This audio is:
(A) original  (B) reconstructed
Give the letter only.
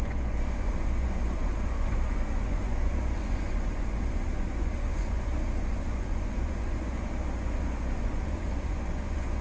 B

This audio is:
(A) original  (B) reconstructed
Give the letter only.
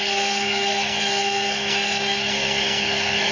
B